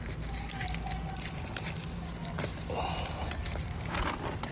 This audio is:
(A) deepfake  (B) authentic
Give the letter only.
B